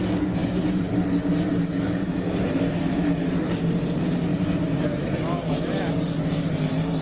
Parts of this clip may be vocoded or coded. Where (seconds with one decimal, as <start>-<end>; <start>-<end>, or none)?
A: 0.4-2.7; 4.3-5.8